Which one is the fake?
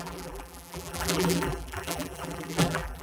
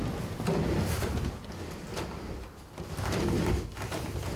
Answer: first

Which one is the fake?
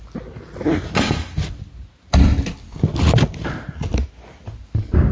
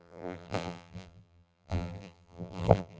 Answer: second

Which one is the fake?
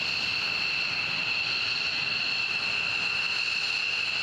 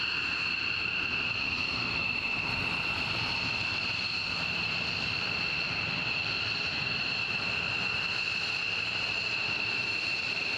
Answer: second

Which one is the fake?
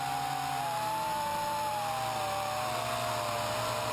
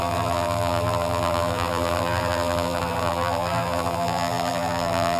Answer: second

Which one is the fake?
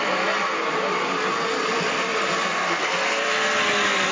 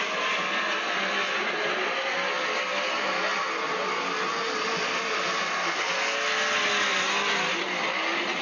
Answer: first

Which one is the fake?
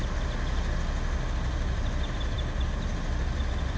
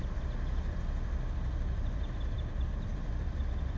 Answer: second